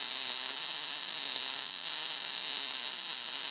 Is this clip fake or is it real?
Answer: real